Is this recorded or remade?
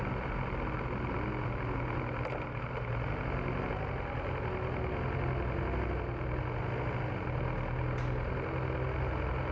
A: recorded